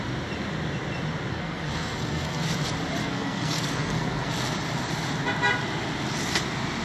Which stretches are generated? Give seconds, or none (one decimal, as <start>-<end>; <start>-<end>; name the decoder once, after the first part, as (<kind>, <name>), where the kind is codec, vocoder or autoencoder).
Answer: 1.3-2.4 (codec, SNAC); 3.0-4.3